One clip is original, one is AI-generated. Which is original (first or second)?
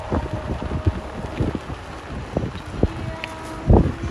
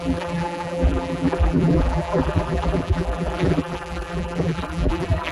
first